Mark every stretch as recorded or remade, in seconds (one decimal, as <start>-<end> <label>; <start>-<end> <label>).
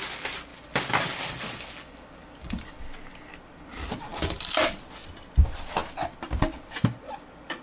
0.0-0.5 recorded; 0.5-2.8 remade; 2.8-4.1 recorded; 4.1-4.8 remade; 4.8-7.6 recorded